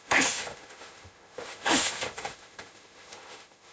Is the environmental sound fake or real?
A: fake